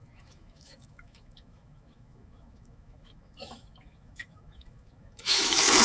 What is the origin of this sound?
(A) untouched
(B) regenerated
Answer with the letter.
B